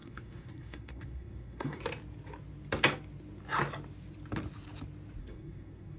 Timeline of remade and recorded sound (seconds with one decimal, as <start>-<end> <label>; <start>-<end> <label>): 0.0-1.8 remade; 1.8-5.2 recorded; 5.2-6.0 remade